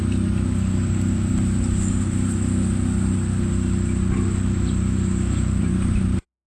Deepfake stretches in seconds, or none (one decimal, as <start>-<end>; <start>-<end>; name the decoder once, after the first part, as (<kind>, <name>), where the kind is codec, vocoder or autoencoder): 5.6-6.5 (vocoder, BigVGAN v2)